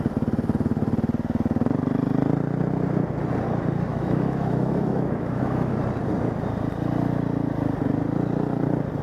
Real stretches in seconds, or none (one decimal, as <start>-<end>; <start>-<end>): 0.0-3.9; 5.7-9.0

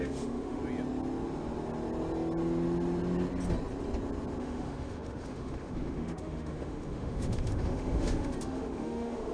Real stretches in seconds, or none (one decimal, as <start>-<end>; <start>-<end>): 0.6-4.4

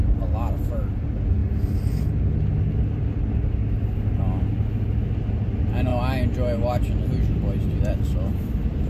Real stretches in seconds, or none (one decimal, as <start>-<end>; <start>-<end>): 0.0-8.9

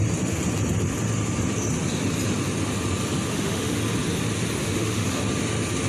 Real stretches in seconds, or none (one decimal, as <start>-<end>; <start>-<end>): 0.0-3.3; 3.8-4.6; 5.2-5.9

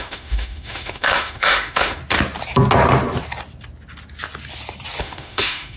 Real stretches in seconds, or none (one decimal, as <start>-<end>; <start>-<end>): 2.0-5.0

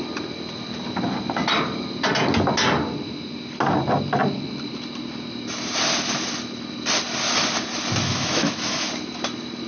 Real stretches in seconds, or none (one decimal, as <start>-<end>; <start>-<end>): 0.0-8.0; 8.9-9.7

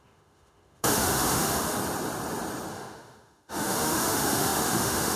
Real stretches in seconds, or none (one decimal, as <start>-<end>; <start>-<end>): 1.8-2.7

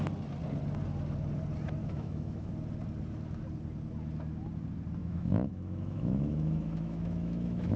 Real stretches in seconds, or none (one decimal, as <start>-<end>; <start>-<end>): 0.0-1.8; 2.5-5.0